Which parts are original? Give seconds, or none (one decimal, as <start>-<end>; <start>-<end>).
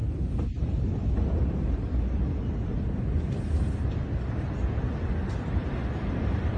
0.0-6.6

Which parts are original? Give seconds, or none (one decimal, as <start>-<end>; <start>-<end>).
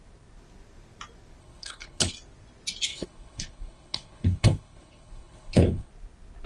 0.0-1.4; 2.1-2.9; 5.9-6.5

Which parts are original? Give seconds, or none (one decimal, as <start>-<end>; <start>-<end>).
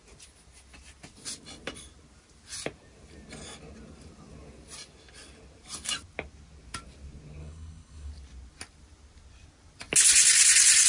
0.0-7.4; 8.1-10.9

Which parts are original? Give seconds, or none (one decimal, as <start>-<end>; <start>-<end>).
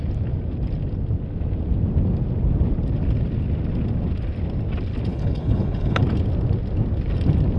0.0-5.1; 6.0-7.6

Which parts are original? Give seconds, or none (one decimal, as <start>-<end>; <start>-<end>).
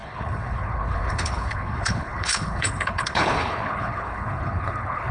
none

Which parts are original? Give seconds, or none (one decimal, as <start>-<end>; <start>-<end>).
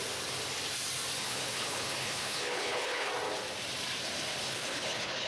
0.0-1.2; 3.1-4.4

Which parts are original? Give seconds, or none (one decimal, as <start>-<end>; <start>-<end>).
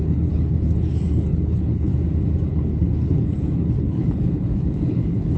1.9-2.5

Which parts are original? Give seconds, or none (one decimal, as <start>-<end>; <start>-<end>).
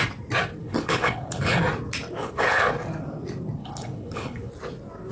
0.0-0.6; 1.6-2.2; 2.7-3.6; 4.5-5.1